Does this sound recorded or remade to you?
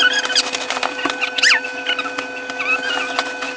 recorded